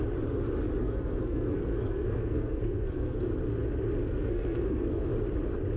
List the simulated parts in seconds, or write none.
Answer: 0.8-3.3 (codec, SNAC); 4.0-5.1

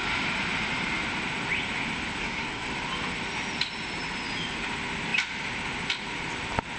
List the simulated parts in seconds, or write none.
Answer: 2.2-2.7 (codec, SNAC)

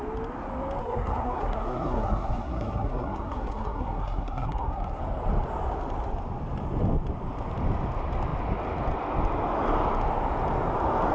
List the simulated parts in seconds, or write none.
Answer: 0.8-5.0 (codec, SNAC)

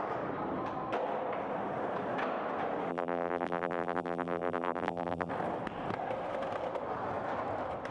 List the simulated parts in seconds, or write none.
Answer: 2.9-5.3 (vocoder, BigVGAN v2)

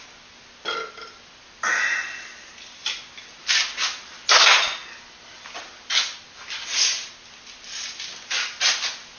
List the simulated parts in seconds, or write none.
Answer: none